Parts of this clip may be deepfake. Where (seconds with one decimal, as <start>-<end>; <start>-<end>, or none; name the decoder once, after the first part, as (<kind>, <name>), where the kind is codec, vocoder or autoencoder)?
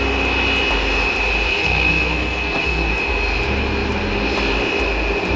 1.5-2.9 (codec, SNAC)